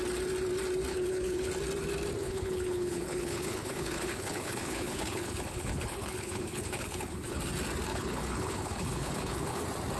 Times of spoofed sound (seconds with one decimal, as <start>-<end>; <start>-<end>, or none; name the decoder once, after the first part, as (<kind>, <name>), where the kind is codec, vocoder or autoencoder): 0.9-1.5 (codec, HILCodec); 2.2-7.4; 7.9-9.6